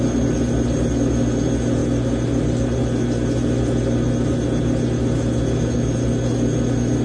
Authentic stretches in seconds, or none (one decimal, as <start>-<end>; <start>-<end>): 0.0-7.0